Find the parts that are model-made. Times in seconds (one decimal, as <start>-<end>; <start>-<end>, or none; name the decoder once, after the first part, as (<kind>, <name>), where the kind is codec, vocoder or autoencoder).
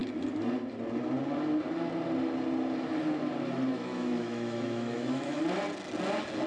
3.7-5.4 (autoencoder, DAC-VAE)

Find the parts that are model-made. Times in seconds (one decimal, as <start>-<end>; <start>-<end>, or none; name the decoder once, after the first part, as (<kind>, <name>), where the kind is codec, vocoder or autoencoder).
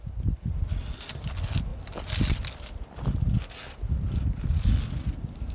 none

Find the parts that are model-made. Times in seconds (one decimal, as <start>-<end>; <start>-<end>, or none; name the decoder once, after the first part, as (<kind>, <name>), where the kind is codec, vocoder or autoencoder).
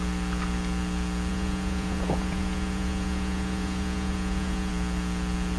1.3-4.7 (vocoder, Vocos)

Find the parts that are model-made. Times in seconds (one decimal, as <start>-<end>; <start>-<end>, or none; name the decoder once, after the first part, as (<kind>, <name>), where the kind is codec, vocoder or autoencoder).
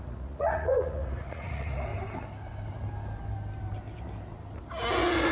0.0-1.9 (vocoder, Vocos)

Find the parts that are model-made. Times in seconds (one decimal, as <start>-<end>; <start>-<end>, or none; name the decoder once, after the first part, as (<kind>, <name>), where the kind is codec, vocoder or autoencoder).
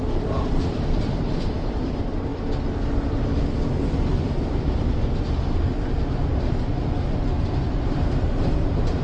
0.0-2.3 (vocoder, BigVGAN v2); 4.9-6.3; 8.3-9.0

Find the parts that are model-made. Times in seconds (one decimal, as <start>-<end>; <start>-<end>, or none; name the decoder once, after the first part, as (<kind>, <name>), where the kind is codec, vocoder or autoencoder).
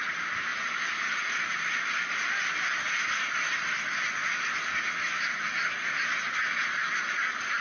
none